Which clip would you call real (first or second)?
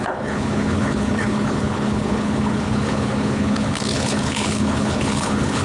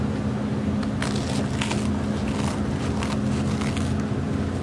second